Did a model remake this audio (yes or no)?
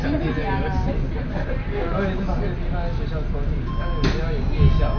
no